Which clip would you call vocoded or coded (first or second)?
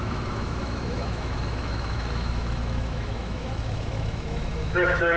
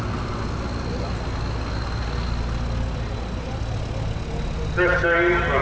first